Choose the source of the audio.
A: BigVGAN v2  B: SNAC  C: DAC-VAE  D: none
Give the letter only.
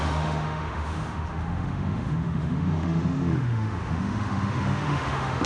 C